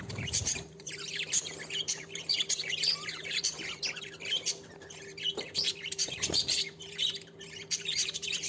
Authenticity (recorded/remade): remade